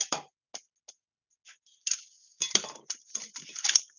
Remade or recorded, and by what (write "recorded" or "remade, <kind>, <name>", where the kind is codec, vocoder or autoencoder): recorded